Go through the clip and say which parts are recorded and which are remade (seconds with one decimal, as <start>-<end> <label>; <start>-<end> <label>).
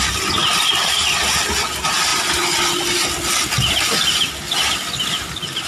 0.0-5.7 recorded